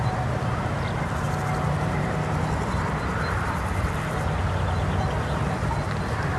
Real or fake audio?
real